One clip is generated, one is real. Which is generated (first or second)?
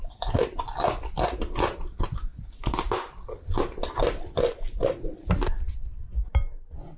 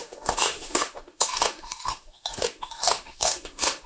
second